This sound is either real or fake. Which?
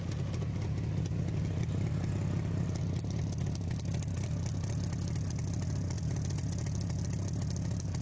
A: real